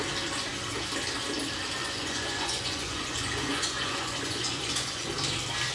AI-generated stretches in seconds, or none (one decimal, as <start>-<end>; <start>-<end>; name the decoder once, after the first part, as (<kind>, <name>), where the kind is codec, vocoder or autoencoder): 1.8-5.1 (vocoder, Vocos)